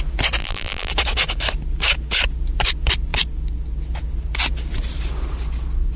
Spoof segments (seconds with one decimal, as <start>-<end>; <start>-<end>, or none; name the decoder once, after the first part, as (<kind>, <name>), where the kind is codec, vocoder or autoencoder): 0.4-0.9 (vocoder, BigVGAN v2)